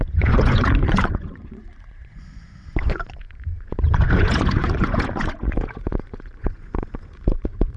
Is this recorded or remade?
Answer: remade